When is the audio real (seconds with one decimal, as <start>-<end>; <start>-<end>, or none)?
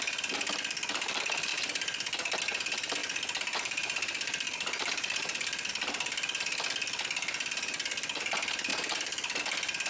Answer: 0.0-1.5; 2.4-3.0; 5.7-8.7; 9.4-9.9